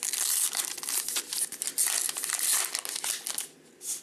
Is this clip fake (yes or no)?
no